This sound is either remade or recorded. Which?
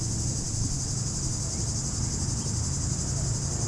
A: recorded